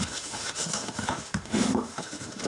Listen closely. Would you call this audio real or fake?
fake